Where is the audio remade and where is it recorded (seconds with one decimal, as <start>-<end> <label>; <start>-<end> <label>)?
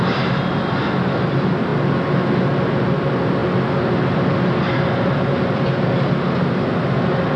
0.0-7.4 recorded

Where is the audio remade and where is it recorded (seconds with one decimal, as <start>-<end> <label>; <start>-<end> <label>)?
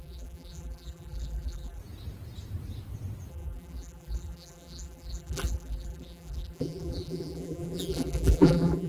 0.0-1.8 remade; 1.8-3.3 recorded; 3.3-8.9 remade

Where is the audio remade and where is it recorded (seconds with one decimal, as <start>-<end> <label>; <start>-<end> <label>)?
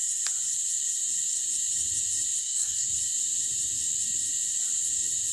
0.0-2.4 recorded; 2.4-2.9 remade; 2.9-5.3 recorded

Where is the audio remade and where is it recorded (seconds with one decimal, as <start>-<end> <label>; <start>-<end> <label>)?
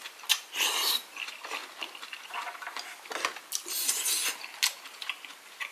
0.0-5.7 recorded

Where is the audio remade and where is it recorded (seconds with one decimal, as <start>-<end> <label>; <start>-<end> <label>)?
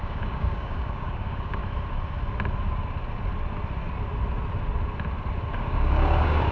0.0-1.6 remade; 1.6-5.5 recorded; 5.5-6.5 remade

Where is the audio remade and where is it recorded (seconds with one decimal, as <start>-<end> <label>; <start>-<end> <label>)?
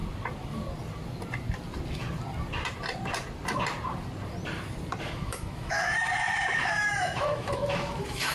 0.0-5.0 recorded; 5.0-8.3 remade